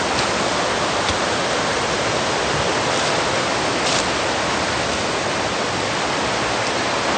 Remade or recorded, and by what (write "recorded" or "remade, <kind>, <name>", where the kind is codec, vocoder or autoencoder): recorded